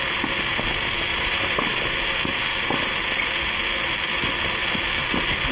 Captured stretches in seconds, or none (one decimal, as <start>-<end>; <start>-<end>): 0.0-1.1; 1.8-5.5

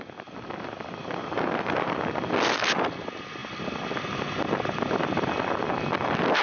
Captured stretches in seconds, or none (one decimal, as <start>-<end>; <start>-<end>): 0.0-1.0; 2.1-6.4

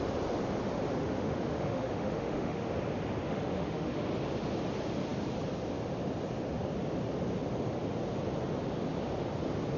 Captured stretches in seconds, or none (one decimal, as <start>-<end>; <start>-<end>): 0.0-1.0; 2.7-3.3; 4.0-9.8

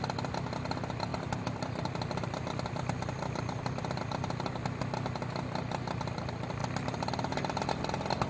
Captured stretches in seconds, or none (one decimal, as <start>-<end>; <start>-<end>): 0.0-1.1; 4.0-6.6; 7.8-8.3

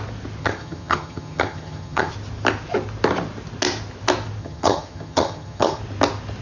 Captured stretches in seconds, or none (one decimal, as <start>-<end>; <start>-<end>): 0.0-0.4; 2.1-4.4; 5.8-6.4